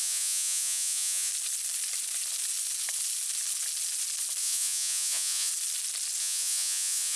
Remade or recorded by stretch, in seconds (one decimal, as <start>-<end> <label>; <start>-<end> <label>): 0.0-1.3 remade; 1.3-4.4 recorded; 4.4-5.5 remade; 5.5-6.2 recorded; 6.2-7.2 remade